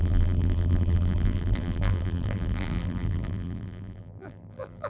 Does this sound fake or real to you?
fake